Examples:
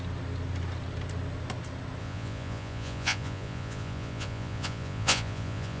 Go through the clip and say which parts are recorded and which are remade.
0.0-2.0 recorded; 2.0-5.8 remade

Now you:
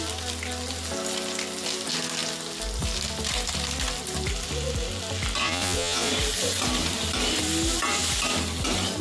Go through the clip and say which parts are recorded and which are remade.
0.0-5.4 recorded; 5.4-6.1 remade; 6.1-9.0 recorded

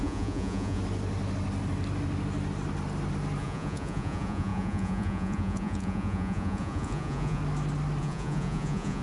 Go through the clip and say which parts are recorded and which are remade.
0.0-0.8 remade; 0.8-3.4 recorded; 3.4-7.4 remade; 7.4-8.0 recorded; 8.0-9.0 remade

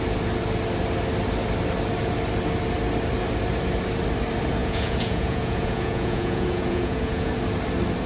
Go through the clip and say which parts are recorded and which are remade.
0.0-4.6 recorded; 4.6-7.3 remade; 7.3-8.1 recorded